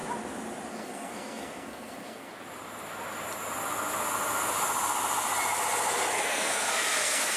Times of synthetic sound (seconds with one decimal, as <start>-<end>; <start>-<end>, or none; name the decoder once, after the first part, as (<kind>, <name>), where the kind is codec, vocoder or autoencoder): 0.7-2.3 (codec, SNAC); 6.1-7.4